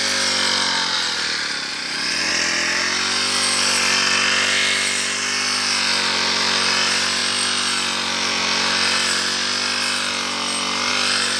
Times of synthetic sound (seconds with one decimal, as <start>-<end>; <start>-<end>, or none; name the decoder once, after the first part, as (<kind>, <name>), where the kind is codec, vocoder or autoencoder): 1.7-2.3 (vocoder, Vocos)